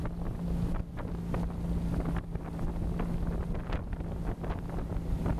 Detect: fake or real real